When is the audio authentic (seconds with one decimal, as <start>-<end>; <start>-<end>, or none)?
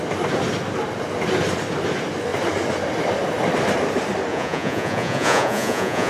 0.0-4.3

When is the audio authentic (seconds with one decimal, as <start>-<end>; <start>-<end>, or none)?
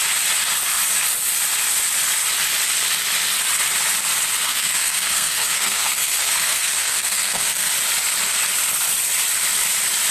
0.0-4.5; 7.7-10.1